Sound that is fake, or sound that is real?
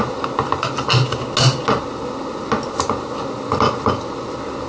real